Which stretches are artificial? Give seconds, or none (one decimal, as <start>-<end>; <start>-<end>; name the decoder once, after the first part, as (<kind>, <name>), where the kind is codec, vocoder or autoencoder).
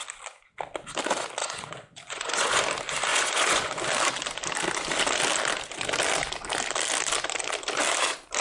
1.4-2.6 (vocoder, Vocos); 3.1-3.8